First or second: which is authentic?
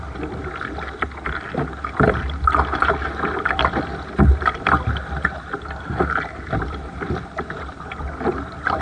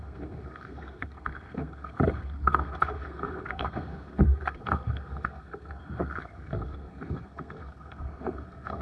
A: first